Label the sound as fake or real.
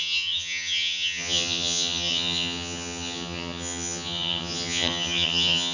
fake